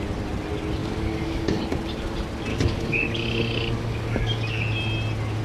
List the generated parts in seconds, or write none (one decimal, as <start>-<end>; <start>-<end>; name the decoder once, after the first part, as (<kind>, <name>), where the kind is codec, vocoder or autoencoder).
0.8-1.6 (codec, DAC); 2.5-4.6